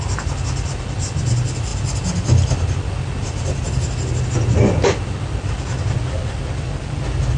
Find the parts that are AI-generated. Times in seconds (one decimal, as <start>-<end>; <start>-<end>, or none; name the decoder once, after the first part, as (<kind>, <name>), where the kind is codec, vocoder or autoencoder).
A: none